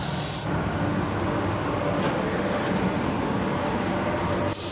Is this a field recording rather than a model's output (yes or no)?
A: yes